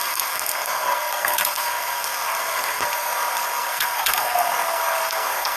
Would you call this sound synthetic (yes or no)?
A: yes